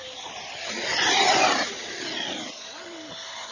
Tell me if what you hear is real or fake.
real